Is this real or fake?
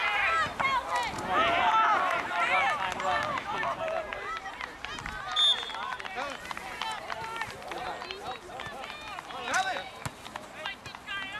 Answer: real